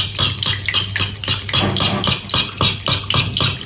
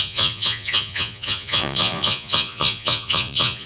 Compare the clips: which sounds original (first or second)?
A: first